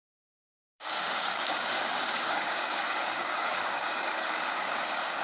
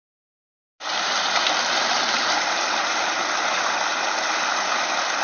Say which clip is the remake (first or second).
first